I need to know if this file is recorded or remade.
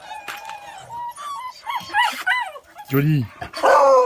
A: recorded